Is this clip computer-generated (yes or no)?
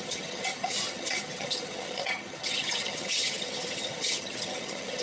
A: yes